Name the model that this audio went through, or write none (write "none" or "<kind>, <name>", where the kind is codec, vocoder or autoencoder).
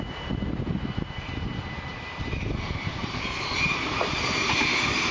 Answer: vocoder, BigVGAN v2